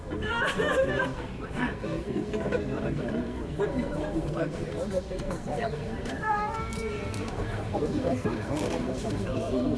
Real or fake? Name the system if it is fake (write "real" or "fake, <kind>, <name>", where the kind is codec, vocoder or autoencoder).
fake, codec, SNAC